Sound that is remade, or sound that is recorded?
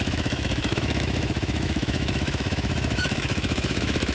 remade